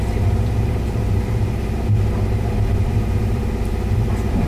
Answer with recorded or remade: remade